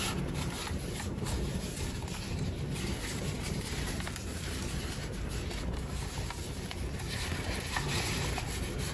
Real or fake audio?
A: fake